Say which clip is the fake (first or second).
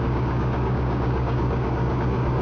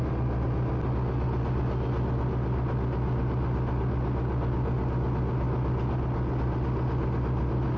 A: first